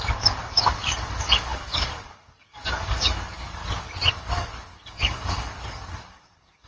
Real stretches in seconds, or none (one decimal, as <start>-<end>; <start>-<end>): 3.6-4.1